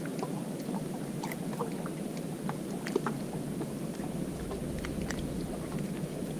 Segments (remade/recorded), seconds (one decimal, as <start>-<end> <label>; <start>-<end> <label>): 0.0-6.4 remade